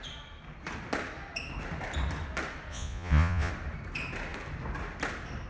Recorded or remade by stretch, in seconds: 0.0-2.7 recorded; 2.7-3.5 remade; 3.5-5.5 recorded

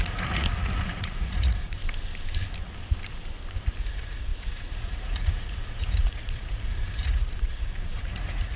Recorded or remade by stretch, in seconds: 0.0-1.8 remade; 1.8-3.8 recorded; 3.8-8.6 remade

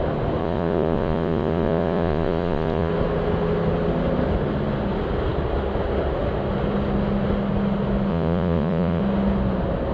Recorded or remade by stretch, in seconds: 0.0-0.4 recorded; 0.4-2.9 remade; 2.9-8.1 recorded; 8.1-9.0 remade; 9.0-9.9 recorded

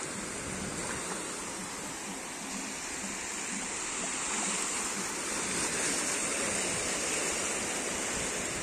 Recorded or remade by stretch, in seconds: 0.0-8.6 recorded

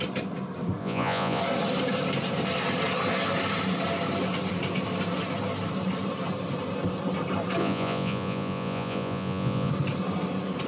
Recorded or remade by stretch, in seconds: 0.0-0.8 recorded; 0.8-1.4 remade; 1.4-7.6 recorded; 7.6-9.7 remade; 9.7-10.7 recorded